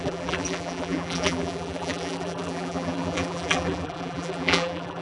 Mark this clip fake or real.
fake